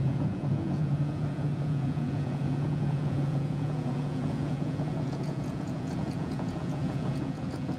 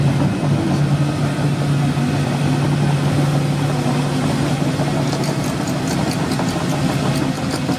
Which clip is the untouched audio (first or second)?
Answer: second